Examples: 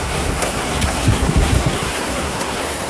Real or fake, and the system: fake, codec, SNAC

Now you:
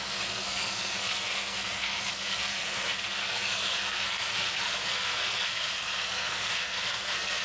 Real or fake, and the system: fake, codec, SNAC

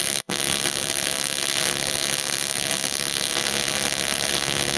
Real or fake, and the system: fake, codec, SNAC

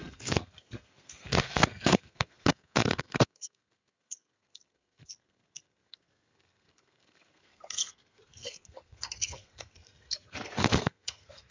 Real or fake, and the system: fake, codec, SNAC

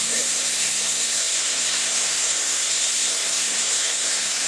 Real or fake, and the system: fake, codec, SNAC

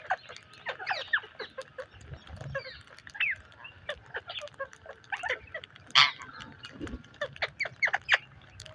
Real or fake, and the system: real